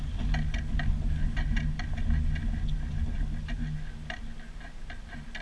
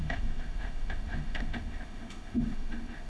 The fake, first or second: second